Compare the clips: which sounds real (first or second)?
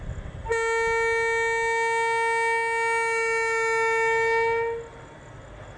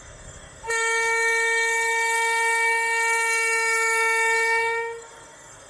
first